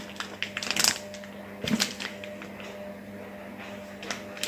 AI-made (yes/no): no